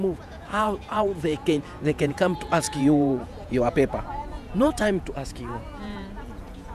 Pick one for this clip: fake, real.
fake